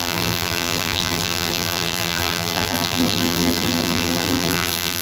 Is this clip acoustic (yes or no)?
no